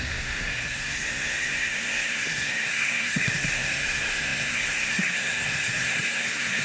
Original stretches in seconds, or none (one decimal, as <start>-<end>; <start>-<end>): none